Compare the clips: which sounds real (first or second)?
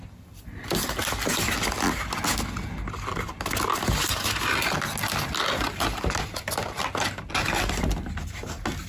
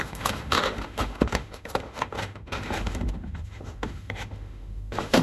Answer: first